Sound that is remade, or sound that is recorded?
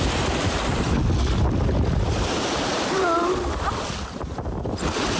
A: recorded